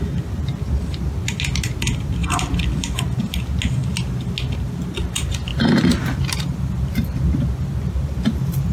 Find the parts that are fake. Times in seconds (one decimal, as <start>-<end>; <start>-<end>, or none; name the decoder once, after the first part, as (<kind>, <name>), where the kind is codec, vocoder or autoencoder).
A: 2.2-3.0 (vocoder, BigVGAN v2); 5.5-7.2